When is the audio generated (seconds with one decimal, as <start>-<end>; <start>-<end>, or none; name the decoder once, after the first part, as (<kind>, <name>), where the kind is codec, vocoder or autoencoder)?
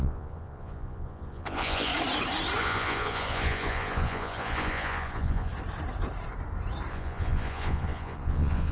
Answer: 0.0-1.9 (vocoder, Vocos); 2.6-5.5; 6.9-8.7